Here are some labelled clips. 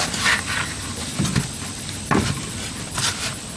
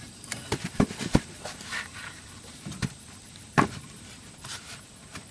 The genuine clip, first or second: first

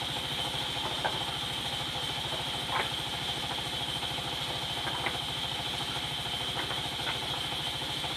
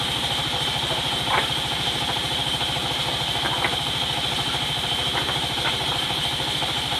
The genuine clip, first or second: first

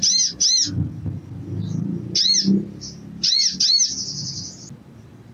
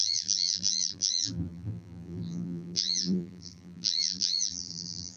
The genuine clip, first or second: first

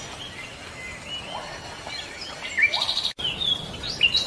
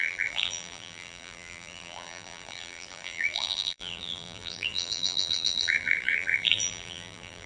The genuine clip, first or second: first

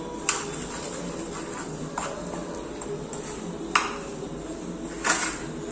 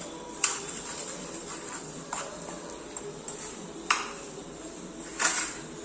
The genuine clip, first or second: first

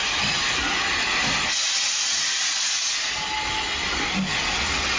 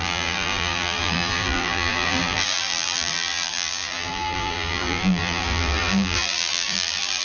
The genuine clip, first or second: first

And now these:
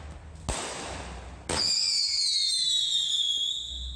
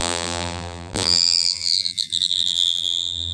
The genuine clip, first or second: first